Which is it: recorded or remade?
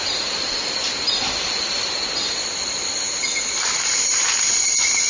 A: recorded